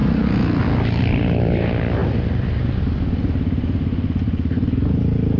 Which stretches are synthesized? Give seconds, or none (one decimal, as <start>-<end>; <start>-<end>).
none

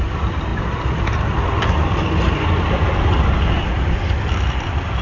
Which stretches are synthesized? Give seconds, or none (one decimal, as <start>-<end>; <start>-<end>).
none

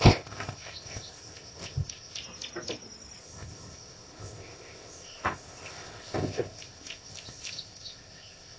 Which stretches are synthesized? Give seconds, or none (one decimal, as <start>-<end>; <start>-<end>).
0.0-2.2; 3.2-8.6

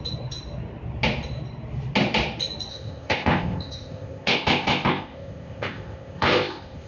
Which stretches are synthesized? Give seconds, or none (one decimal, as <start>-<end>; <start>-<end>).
2.7-6.9

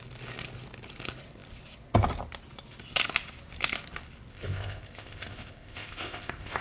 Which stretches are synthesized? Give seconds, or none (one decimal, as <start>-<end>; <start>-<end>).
4.3-6.6

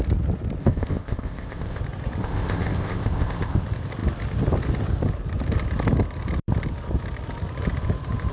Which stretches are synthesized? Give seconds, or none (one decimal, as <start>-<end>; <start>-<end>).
0.6-1.8; 2.2-3.6

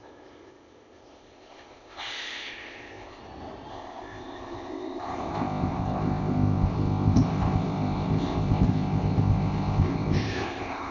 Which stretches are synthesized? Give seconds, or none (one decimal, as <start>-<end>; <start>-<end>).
0.0-3.2; 3.7-10.9

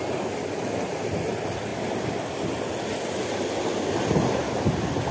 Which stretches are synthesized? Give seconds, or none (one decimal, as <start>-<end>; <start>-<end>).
none